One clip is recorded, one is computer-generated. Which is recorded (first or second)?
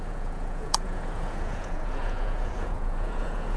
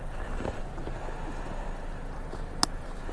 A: second